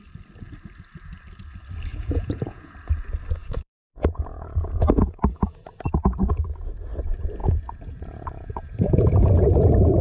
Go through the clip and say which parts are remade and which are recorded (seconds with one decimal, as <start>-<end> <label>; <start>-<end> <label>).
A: 0.0-1.9 recorded; 1.9-2.7 remade; 2.7-3.4 recorded; 3.4-5.6 remade; 5.6-7.4 recorded; 7.4-9.3 remade; 9.3-10.0 recorded